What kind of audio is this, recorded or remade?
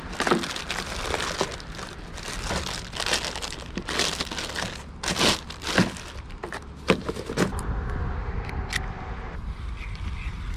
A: recorded